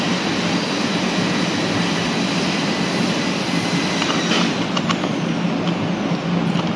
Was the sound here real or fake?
real